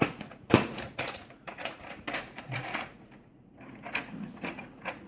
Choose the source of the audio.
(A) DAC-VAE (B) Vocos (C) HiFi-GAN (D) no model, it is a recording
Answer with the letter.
B